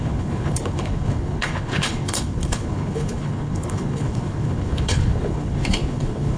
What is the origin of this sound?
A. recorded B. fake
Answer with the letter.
B